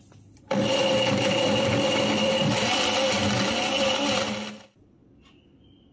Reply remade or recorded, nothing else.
recorded